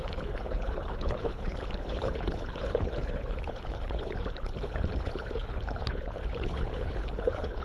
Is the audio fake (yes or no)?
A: yes